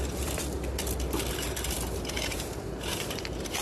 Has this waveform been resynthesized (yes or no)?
yes